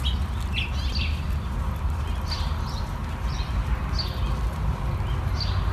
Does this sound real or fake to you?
real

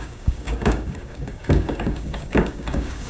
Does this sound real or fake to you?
fake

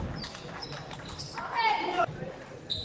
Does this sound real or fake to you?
fake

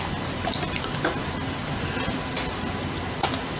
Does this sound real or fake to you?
real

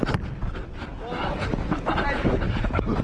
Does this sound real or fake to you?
real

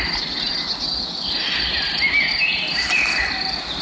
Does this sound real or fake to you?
real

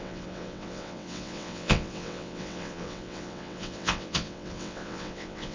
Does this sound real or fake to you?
fake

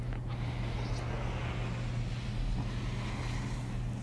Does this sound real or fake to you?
real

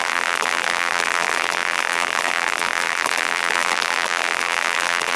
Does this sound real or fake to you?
fake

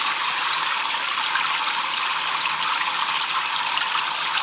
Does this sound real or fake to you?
real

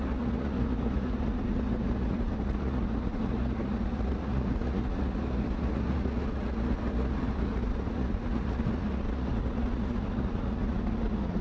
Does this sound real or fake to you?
fake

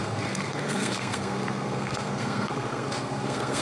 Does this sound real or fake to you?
fake